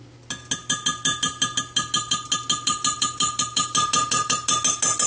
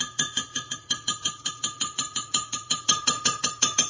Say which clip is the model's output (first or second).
second